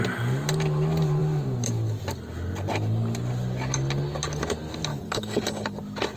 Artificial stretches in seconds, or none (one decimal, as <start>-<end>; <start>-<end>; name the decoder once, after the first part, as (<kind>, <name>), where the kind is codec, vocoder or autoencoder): 4.9-5.8 (codec, DAC)